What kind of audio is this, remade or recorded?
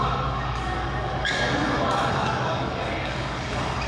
remade